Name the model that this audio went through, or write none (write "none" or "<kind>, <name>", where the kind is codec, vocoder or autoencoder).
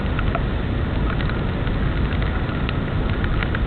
none